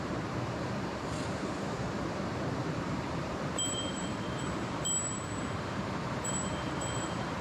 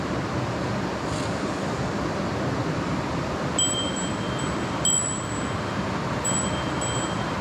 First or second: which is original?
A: second